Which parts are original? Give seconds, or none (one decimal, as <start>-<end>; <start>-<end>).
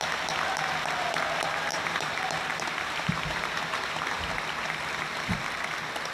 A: 0.0-1.7; 5.4-6.1